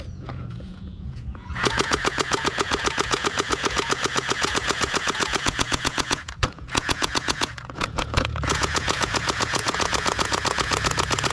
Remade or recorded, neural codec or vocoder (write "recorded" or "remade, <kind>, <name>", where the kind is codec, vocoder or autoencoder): remade, vocoder, Vocos